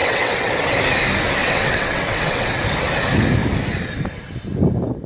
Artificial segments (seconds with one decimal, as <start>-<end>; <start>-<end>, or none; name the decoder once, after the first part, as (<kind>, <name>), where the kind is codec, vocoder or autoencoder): 0.0-0.5 (vocoder, WaveNeXt); 1.4-2.6

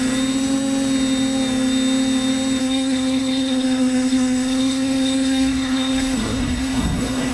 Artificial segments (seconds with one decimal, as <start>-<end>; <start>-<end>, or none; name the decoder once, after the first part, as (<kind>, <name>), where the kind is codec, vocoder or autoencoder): 2.6-7.3 (codec, SNAC)

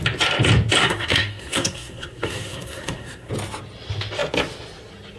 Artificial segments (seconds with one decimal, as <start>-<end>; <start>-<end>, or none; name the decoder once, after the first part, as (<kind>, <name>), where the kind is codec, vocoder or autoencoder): 0.8-3.3 (codec, SNAC)

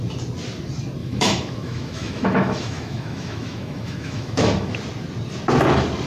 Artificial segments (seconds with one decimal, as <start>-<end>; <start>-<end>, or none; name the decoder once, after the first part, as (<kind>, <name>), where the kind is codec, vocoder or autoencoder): 1.0-4.7 (autoencoder, DAC-VAE)

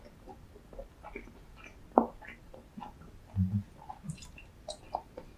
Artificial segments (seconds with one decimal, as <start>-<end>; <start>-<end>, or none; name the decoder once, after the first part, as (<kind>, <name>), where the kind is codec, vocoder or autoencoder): none

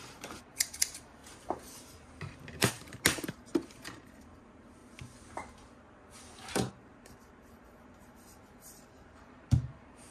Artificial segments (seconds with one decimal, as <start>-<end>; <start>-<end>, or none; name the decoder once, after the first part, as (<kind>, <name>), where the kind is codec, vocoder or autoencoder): 0.0-4.8 (vocoder, BigVGAN v2); 6.7-10.1